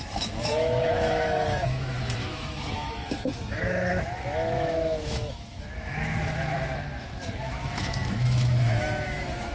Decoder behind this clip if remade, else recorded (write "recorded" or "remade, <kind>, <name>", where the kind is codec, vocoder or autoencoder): remade, autoencoder, DAC-VAE